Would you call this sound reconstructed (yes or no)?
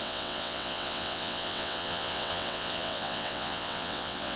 yes